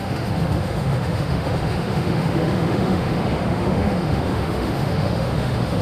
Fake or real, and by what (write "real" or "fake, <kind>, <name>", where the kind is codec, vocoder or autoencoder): fake, autoencoder, DAC-VAE